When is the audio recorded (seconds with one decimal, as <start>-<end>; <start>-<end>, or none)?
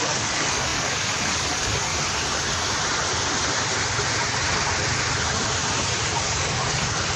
1.9-6.2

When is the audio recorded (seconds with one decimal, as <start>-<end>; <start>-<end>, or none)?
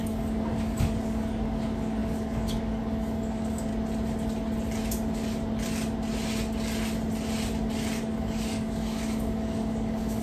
3.7-8.0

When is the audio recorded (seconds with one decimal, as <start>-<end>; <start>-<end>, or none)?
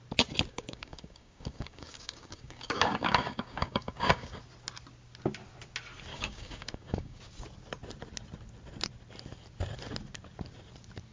0.0-0.5; 4.4-6.1; 7.2-11.1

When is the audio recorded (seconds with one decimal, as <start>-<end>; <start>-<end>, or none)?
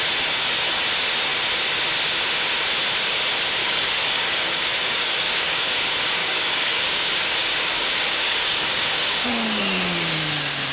0.0-3.6; 5.7-6.2; 9.6-10.7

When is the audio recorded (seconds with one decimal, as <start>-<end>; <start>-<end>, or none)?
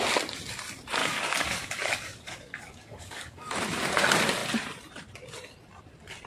0.0-1.0; 3.5-6.3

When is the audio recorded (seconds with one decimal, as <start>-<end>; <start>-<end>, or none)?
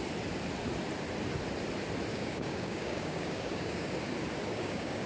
0.0-2.1; 3.9-4.5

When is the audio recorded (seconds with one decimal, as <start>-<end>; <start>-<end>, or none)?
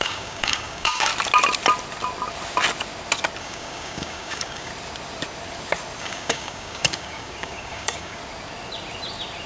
1.1-3.4; 4.7-6.0; 8.2-9.5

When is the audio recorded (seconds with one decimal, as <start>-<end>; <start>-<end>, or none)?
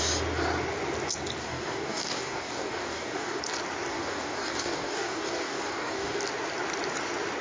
0.0-1.4; 3.4-3.9; 6.2-7.4